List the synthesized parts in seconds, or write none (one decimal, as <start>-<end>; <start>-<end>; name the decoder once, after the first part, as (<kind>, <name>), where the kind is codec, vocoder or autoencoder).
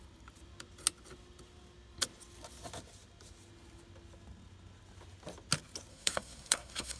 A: 5.9-7.0 (codec, SNAC)